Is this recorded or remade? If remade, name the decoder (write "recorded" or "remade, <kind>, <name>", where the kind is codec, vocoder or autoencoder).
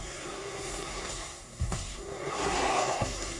remade, codec, SNAC